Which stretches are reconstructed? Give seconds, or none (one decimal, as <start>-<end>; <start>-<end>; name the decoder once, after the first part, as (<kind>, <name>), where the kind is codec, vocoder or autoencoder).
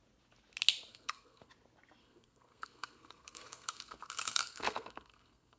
0.9-1.5 (codec, SNAC); 2.0-5.6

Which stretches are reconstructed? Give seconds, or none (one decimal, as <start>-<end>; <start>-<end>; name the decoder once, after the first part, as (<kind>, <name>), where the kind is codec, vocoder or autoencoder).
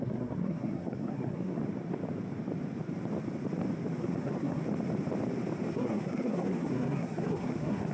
0.0-1.6 (codec, SNAC); 4.0-4.6; 5.7-7.9